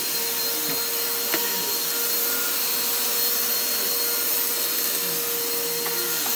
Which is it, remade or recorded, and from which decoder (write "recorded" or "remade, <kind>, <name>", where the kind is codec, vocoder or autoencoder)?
recorded